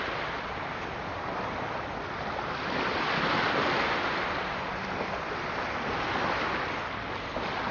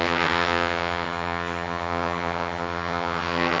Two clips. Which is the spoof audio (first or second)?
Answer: second